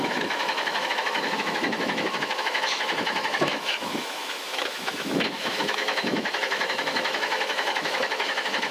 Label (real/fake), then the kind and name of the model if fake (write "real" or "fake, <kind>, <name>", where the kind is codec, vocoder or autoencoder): fake, autoencoder, DAC-VAE